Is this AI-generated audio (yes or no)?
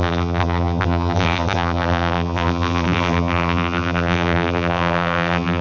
yes